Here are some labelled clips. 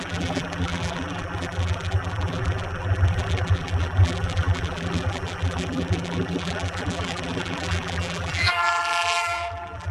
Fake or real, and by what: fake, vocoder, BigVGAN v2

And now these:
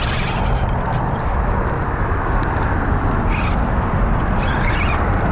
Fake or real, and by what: real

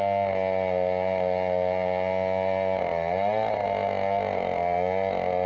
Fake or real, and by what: real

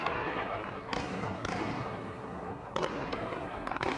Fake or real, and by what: fake, codec, SNAC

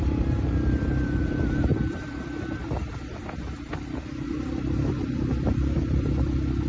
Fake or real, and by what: fake, vocoder, BigVGAN v2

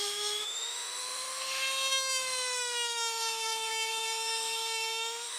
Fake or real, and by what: fake, autoencoder, DAC-VAE